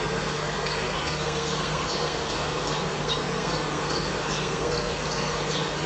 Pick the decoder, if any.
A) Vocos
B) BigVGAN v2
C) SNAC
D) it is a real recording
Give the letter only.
C